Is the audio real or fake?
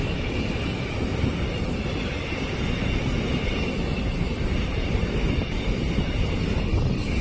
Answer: real